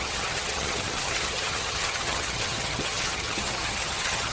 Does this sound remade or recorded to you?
remade